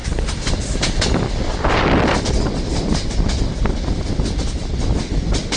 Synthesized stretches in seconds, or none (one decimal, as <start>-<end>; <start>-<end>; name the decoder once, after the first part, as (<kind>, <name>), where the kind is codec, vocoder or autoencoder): 0.0-3.4 (vocoder, BigVGAN v2)